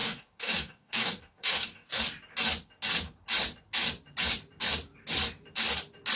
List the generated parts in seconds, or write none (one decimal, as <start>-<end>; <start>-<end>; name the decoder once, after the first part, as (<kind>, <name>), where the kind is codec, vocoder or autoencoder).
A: 0.0-2.0 (codec, DAC)